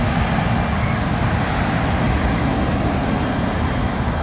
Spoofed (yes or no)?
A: no